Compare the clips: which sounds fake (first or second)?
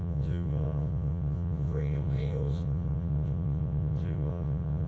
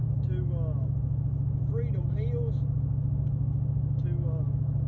first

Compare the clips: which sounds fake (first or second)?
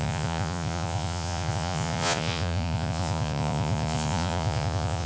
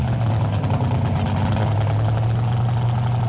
first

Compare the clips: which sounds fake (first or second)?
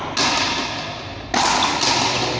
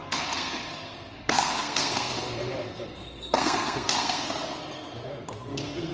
second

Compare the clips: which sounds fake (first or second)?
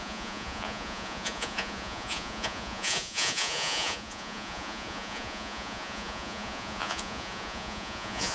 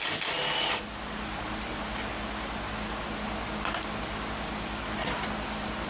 first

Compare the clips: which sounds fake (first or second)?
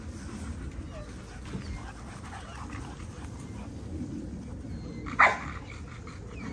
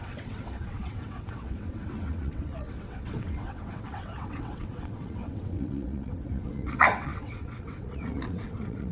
second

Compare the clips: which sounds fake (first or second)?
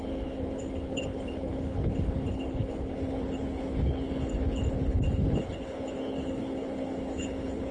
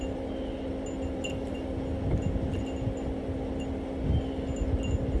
first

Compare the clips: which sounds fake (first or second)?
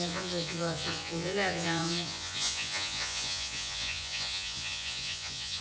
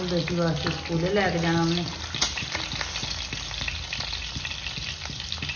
first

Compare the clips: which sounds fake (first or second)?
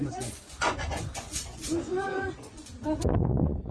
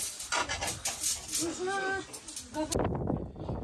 first